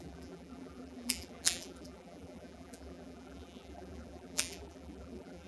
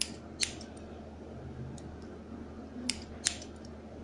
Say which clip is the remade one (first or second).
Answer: first